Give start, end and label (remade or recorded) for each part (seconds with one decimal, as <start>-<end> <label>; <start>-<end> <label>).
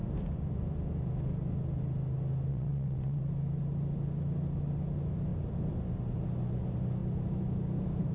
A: 0.0-2.5 recorded; 2.5-3.2 remade; 3.2-8.1 recorded